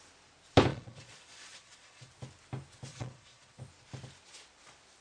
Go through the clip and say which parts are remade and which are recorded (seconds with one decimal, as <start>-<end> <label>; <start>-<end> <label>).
0.0-0.7 recorded; 0.7-2.1 remade; 2.1-2.9 recorded; 2.9-3.6 remade; 3.6-5.0 recorded

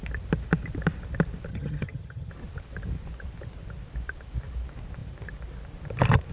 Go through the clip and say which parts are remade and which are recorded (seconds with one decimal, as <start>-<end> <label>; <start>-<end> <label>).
0.0-1.5 recorded; 1.5-2.3 remade; 2.3-6.3 recorded